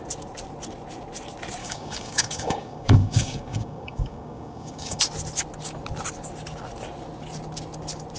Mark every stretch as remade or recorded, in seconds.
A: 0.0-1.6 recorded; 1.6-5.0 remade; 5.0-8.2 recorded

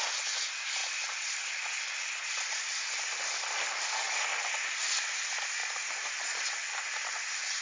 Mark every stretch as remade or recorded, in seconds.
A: 0.0-0.8 recorded; 0.8-4.5 remade; 4.5-6.7 recorded; 6.7-7.6 remade